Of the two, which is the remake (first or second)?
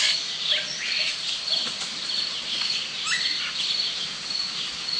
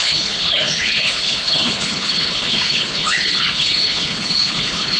second